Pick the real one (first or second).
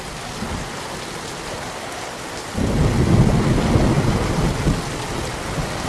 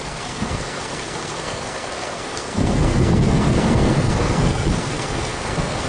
first